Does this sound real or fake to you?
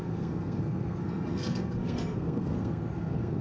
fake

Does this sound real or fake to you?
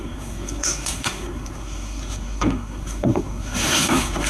fake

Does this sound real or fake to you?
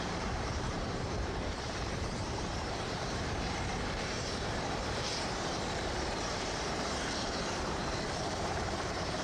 fake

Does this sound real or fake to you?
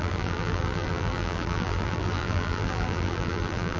fake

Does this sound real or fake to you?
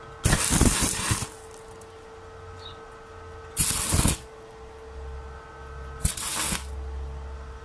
real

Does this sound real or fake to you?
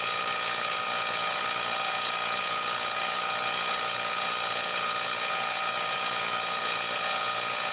fake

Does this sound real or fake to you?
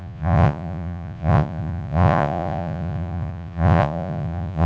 fake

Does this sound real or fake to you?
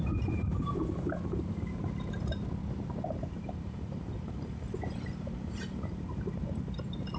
fake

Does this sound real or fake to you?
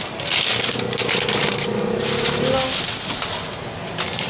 real